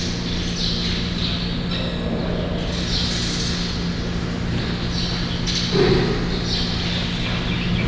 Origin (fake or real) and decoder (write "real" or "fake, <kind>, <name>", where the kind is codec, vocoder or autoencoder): real